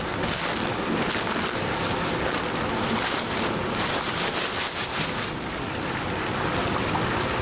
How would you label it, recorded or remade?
recorded